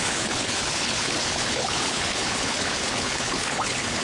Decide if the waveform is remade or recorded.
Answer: remade